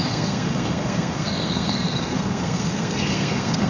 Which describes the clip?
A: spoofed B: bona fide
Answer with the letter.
A